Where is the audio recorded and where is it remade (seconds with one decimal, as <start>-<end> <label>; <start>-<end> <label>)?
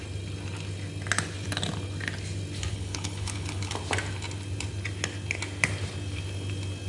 0.0-2.7 recorded; 2.7-3.7 remade; 3.7-6.9 recorded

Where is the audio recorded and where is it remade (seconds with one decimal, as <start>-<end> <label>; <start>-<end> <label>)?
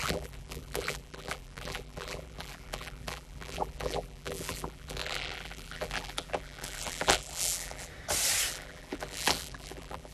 0.0-7.9 remade; 7.9-8.5 recorded; 8.5-10.1 remade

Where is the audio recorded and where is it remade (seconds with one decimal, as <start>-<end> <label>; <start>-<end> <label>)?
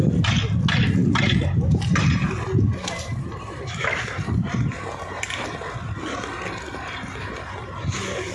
0.0-1.0 recorded; 1.0-3.8 remade; 3.8-8.3 recorded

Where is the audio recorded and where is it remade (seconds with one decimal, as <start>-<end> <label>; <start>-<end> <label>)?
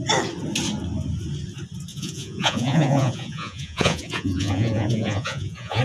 0.0-1.9 recorded; 1.9-5.8 remade